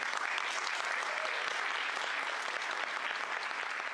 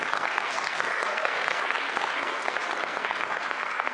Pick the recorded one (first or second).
first